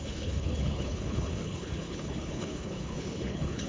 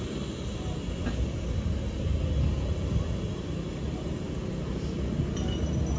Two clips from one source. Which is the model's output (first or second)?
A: first